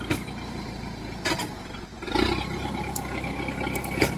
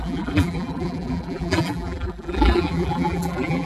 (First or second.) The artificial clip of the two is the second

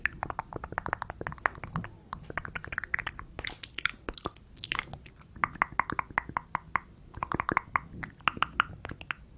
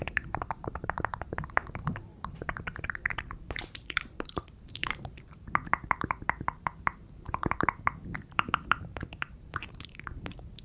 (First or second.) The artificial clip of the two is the second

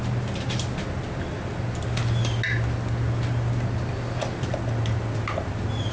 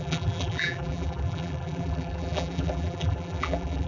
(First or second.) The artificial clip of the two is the second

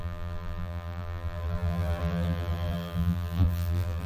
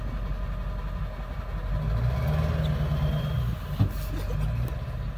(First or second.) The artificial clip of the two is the first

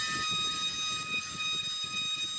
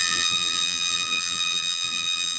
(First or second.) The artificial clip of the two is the second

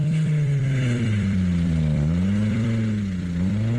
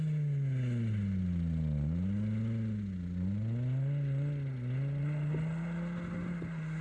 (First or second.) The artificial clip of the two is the first